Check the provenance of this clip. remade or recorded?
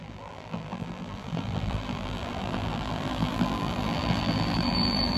remade